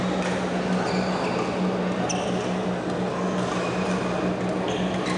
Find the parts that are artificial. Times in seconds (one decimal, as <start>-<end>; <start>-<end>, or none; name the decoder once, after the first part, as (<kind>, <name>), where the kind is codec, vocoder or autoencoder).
none